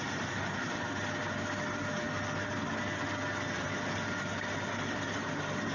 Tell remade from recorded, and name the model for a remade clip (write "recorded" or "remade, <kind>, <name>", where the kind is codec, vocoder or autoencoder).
recorded